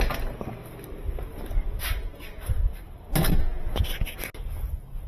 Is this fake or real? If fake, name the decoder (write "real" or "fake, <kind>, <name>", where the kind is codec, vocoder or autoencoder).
real